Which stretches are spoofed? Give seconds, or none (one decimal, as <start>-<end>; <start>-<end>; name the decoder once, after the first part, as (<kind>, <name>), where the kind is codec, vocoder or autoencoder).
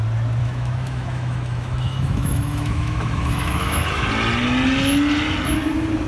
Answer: 0.4-4.1 (autoencoder, DAC-VAE)